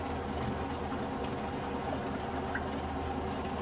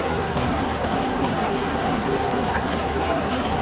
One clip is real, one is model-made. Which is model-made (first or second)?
second